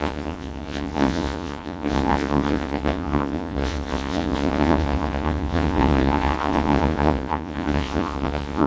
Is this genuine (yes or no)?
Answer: no